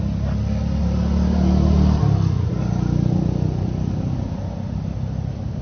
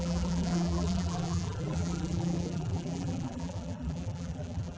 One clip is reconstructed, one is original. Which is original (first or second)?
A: first